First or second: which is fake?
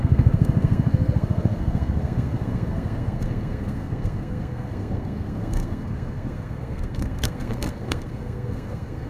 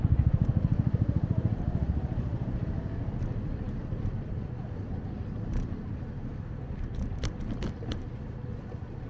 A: first